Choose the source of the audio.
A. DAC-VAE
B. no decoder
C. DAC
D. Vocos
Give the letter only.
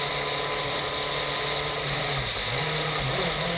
B